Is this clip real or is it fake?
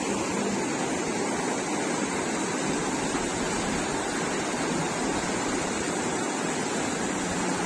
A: real